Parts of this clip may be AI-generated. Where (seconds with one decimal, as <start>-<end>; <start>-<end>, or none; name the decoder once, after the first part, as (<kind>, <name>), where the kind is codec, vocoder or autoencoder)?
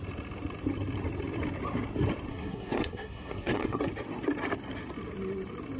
2.3-3.8 (codec, SNAC)